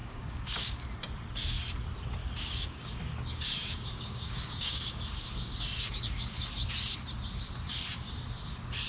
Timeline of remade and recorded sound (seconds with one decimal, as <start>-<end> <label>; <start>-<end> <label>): 0.0-0.8 remade; 0.8-2.2 recorded; 2.2-6.7 remade; 6.7-8.9 recorded